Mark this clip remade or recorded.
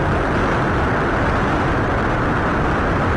recorded